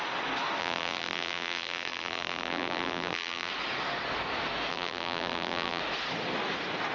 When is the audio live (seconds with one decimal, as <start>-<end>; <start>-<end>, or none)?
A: 0.0-0.6; 3.5-4.7; 5.8-6.9